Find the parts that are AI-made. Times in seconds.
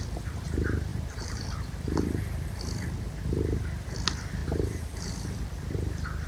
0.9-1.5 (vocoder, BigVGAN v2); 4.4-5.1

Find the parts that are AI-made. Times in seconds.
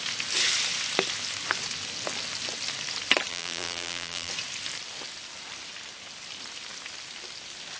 3.3-4.3 (vocoder, BigVGAN v2)